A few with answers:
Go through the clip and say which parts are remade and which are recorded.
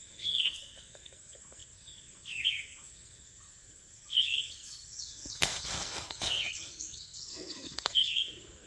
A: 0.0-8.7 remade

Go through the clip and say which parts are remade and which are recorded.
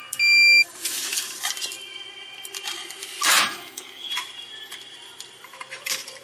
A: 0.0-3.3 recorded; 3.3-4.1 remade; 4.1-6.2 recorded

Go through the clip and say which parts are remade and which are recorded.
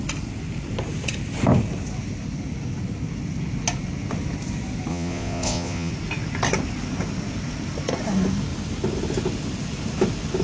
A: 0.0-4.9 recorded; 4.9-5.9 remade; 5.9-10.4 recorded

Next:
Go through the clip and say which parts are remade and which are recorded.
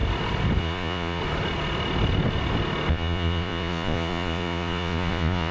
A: 0.0-0.6 recorded; 0.6-1.2 remade; 1.2-2.9 recorded; 2.9-5.5 remade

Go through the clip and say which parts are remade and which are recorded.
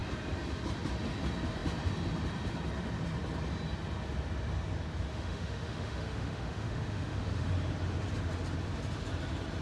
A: 0.0-5.1 recorded; 5.1-7.5 remade; 7.5-9.6 recorded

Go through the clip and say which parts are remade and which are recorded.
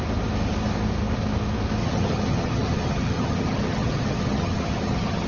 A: 0.0-1.8 recorded; 1.8-5.3 remade